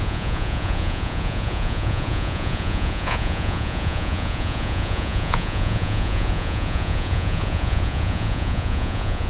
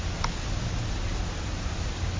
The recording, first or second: second